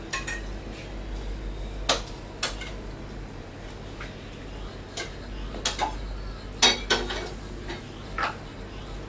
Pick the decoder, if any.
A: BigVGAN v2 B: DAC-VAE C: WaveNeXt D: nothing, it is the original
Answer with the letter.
D